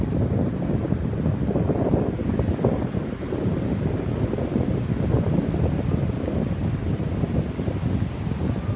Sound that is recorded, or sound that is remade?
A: recorded